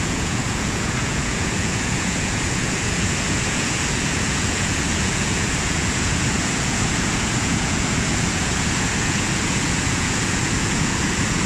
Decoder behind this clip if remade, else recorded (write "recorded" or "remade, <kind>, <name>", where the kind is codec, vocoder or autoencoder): remade, vocoder, Vocos